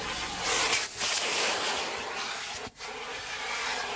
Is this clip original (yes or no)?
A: yes